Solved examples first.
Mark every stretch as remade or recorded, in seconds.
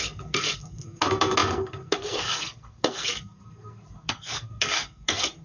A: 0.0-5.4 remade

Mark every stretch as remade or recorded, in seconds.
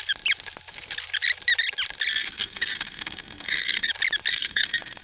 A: 0.0-2.1 recorded; 2.1-3.9 remade; 3.9-4.3 recorded; 4.3-5.0 remade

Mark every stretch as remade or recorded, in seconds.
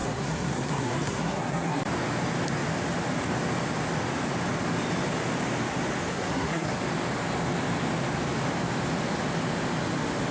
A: 0.0-1.8 remade; 1.8-6.1 recorded; 6.1-6.8 remade; 6.8-10.3 recorded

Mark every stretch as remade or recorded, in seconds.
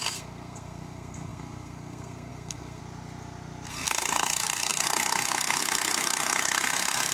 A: 0.0-2.8 remade; 2.8-3.7 recorded; 3.7-7.1 remade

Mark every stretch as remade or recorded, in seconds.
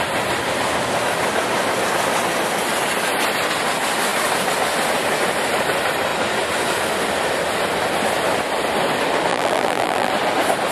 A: 0.0-9.3 recorded; 9.3-10.1 remade; 10.1-10.7 recorded